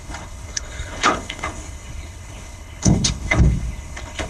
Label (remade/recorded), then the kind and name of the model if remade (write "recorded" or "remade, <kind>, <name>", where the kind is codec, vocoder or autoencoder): remade, codec, HILCodec